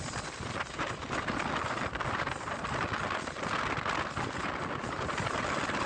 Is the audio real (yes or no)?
yes